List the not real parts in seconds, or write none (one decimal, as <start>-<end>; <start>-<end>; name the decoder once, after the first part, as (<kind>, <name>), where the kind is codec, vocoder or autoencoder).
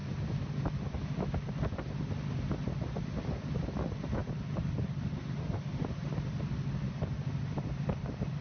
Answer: none